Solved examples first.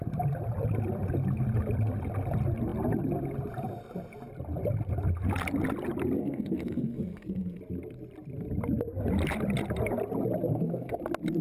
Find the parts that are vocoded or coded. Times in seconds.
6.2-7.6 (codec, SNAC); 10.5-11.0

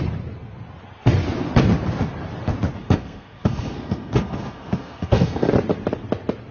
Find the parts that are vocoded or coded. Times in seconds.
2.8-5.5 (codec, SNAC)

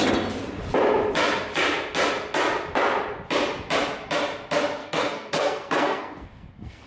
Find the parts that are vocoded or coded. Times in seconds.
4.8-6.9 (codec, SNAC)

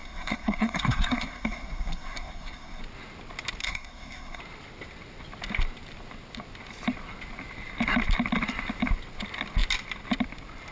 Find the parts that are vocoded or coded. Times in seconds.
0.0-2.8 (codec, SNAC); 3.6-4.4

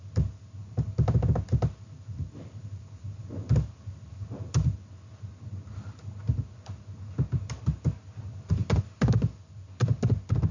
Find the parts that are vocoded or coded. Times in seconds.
none

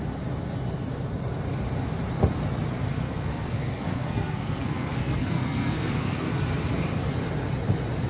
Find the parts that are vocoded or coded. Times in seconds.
2.9-6.3 (codec, SNAC)

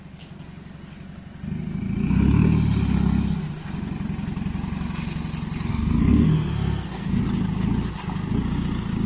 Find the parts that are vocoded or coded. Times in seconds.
5.7-7.2 (codec, SNAC)

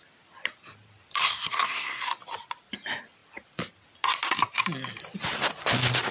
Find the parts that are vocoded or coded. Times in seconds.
1.2-2.0 (codec, SNAC)